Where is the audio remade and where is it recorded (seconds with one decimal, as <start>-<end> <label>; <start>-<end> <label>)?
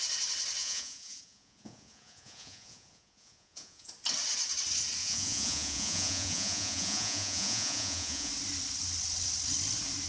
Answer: 0.0-0.6 recorded; 0.6-3.9 remade; 3.9-5.0 recorded; 5.0-8.3 remade; 8.3-10.1 recorded